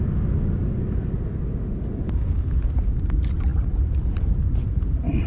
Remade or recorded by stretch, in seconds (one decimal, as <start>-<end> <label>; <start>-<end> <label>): 0.0-5.3 recorded